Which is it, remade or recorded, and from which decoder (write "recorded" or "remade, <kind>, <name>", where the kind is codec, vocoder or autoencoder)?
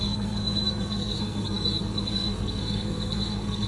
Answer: remade, codec, SNAC